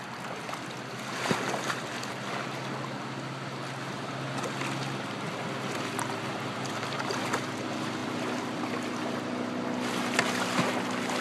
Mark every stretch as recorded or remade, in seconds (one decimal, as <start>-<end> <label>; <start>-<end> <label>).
0.0-11.2 recorded